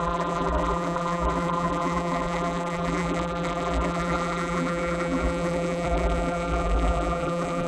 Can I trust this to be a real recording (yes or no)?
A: no